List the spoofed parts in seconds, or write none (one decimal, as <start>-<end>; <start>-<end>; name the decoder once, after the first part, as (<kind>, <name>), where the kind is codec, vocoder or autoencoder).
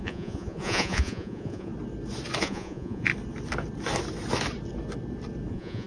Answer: 0.0-1.7 (vocoder, Vocos); 2.4-3.1; 5.5-5.9